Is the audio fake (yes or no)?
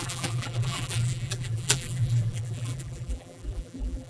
yes